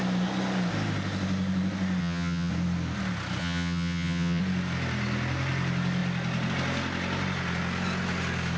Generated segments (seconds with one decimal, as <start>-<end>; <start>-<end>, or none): 2.0-2.5; 3.4-4.4